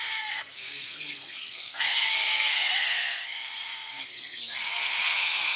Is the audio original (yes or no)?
no